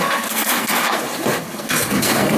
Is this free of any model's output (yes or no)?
no